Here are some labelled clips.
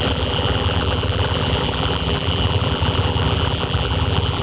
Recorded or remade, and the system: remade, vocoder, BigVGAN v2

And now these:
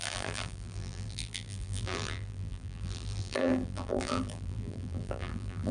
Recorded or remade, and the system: remade, vocoder, BigVGAN v2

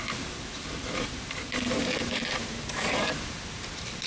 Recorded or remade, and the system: remade, vocoder, BigVGAN v2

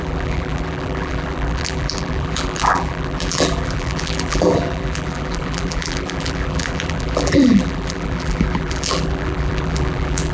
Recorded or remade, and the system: remade, vocoder, BigVGAN v2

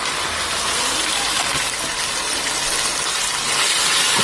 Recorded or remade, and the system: recorded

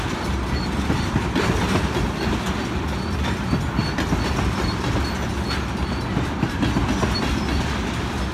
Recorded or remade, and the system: recorded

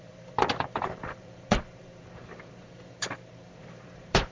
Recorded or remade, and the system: remade, vocoder, BigVGAN v2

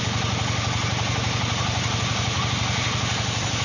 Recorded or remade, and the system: recorded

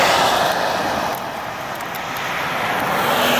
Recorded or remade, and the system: recorded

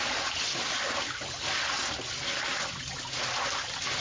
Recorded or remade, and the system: recorded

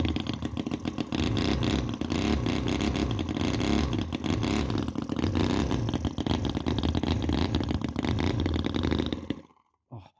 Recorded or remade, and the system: recorded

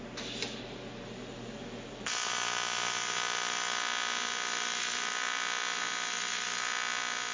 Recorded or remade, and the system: recorded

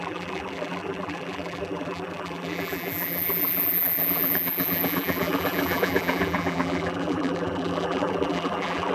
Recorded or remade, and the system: remade, vocoder, BigVGAN v2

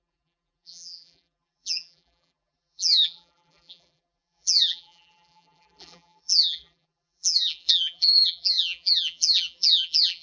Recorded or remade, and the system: remade, vocoder, BigVGAN v2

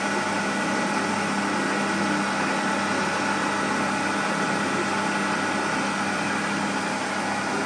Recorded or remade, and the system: recorded